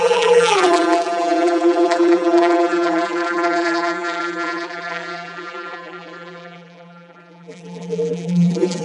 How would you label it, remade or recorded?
remade